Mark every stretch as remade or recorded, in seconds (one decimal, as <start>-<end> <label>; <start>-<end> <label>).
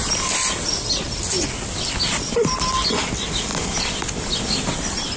0.0-5.2 recorded